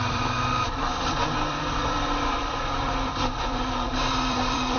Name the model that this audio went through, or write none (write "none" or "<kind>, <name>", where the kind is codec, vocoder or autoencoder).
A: vocoder, BigVGAN v2